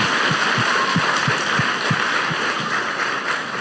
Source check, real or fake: real